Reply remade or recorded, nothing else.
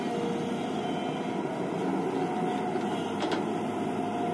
recorded